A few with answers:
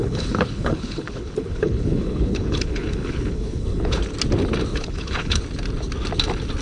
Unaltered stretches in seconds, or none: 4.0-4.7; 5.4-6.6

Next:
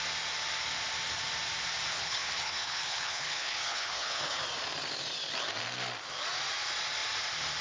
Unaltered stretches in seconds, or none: 0.0-1.9; 4.4-7.6

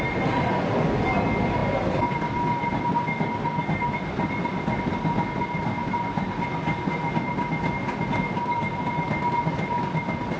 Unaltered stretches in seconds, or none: 0.0-10.4

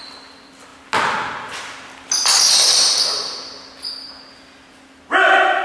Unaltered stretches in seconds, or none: 0.0-5.6

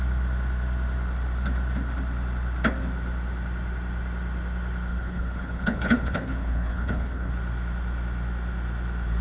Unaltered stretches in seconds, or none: 0.0-4.9; 7.3-9.2

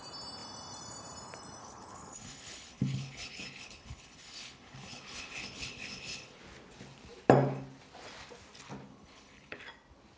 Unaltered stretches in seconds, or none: 0.0-1.6; 6.4-8.9; 9.6-10.2

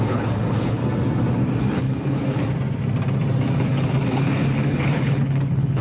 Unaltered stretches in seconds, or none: 0.8-1.6; 2.4-3.6